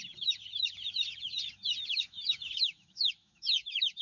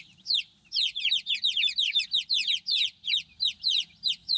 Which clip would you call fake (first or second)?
first